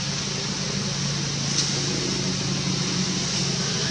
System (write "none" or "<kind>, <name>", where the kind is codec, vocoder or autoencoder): none